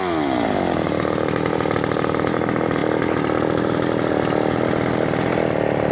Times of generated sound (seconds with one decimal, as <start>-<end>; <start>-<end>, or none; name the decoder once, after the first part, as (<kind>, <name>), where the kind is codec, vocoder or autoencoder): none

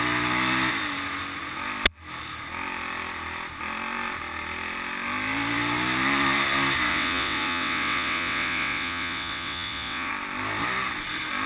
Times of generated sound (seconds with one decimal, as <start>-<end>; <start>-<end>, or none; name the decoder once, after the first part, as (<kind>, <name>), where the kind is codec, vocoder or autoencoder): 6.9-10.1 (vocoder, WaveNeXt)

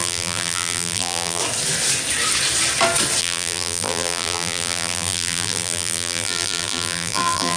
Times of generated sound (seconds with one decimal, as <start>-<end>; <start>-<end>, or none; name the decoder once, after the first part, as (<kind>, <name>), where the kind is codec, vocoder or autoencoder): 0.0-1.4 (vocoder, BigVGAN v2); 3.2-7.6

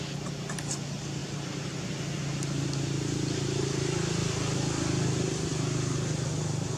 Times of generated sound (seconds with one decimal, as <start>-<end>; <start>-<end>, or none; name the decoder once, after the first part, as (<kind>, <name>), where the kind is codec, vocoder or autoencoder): 1.2-2.2 (vocoder, BigVGAN v2)

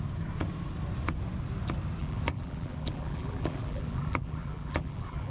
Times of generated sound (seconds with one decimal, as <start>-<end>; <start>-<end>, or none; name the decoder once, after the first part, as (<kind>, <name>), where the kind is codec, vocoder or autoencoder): 2.0-5.3 (vocoder, BigVGAN v2)

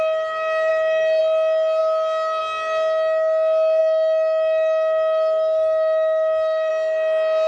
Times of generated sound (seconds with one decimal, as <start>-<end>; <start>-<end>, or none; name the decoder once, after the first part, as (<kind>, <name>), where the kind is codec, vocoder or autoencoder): 0.7-1.2 (autoencoder, DAC-VAE); 3.8-6.7

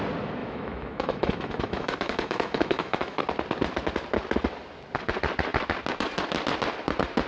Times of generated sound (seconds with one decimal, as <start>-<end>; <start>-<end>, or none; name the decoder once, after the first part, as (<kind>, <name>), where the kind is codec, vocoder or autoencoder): 0.4-3.2 (autoencoder, DAC-VAE)